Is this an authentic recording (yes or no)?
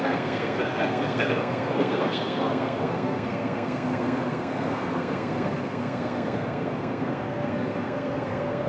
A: no